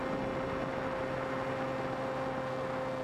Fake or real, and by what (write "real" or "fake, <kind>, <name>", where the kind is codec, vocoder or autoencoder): real